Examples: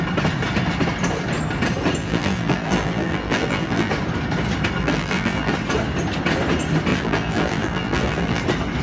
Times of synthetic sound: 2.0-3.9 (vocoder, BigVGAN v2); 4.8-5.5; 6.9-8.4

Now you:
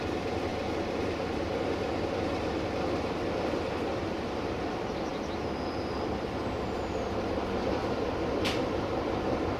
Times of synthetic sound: 0.0-0.5 (vocoder, BigVGAN v2); 3.4-9.6

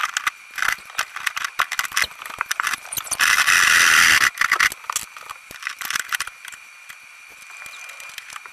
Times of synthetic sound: 5.0-7.6 (vocoder, BigVGAN v2)

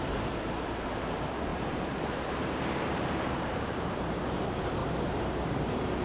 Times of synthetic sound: 0.0-4.8 (vocoder, BigVGAN v2)

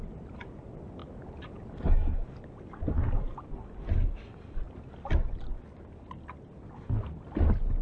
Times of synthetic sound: none

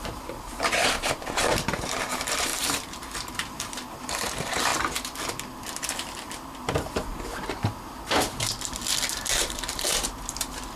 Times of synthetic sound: 0.0-4.7 (vocoder, BigVGAN v2); 9.4-10.8